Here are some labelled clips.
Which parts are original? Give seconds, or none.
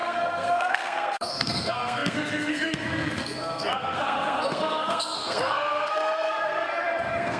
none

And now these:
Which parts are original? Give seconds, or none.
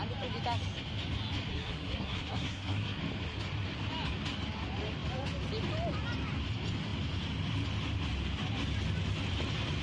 0.0-1.5; 3.0-9.8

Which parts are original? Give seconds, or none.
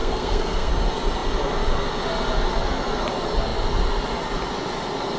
0.7-5.2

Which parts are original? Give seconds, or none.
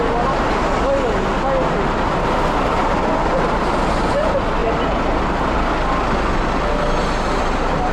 0.0-7.9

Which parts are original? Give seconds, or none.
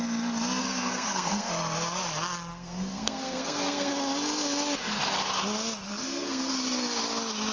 0.0-0.6; 1.5-2.5; 3.9-5.9; 6.5-7.5